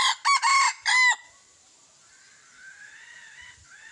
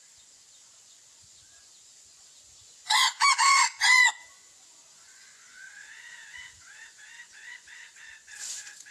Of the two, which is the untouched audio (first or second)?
first